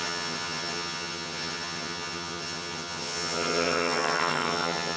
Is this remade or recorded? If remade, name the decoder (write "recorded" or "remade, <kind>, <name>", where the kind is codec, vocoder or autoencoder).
remade, vocoder, HiFi-GAN